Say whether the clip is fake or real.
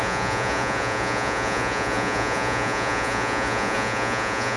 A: fake